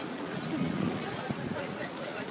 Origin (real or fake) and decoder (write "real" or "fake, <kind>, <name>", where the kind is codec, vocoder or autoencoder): fake, vocoder, Vocos